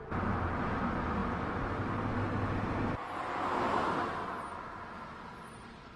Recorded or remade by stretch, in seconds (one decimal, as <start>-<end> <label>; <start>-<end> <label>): 0.0-6.0 recorded